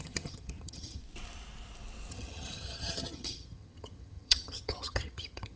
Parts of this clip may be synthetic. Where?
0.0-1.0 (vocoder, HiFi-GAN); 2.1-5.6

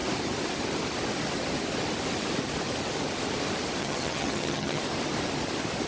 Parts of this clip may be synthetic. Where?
3.8-4.8 (vocoder, HiFi-GAN)

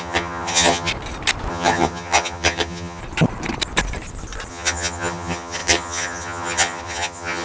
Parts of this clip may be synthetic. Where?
0.0-0.9 (vocoder, HiFi-GAN); 1.5-3.0; 4.5-7.4

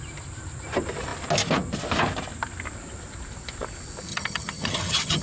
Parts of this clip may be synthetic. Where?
4.1-5.2 (vocoder, HiFi-GAN)

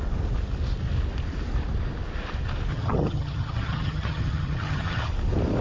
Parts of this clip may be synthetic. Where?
2.7-5.1 (vocoder, HiFi-GAN)